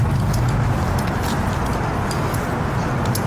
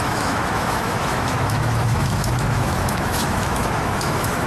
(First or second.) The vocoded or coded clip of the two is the second